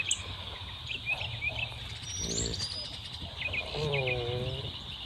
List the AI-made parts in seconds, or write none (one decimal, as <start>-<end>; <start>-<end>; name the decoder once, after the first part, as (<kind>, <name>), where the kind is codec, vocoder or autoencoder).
0.9-4.0 (vocoder, BigVGAN v2)